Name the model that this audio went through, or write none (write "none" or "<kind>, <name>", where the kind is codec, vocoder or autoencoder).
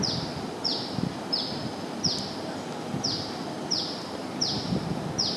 none